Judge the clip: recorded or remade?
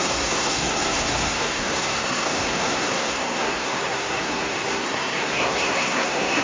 remade